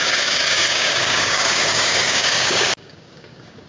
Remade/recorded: remade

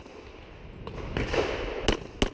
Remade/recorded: recorded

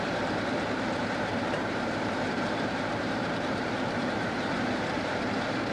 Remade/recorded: remade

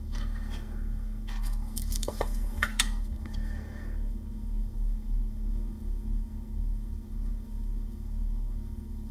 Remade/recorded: remade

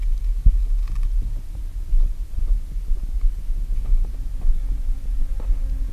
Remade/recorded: recorded